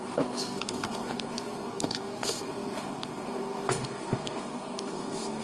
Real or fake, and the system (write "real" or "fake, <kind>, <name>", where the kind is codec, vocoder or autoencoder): fake, codec, SNAC